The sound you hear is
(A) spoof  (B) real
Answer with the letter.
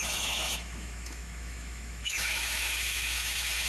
A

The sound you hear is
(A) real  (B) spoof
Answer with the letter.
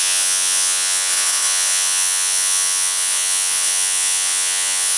B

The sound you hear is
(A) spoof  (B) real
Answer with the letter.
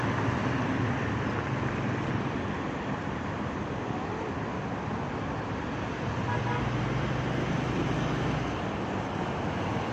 B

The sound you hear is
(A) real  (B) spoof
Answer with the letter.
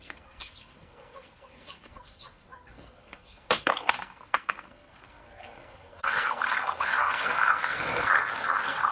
B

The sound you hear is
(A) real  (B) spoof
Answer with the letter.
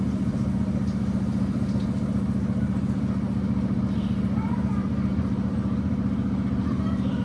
A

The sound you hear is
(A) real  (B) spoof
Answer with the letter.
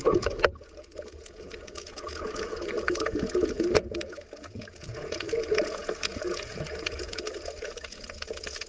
B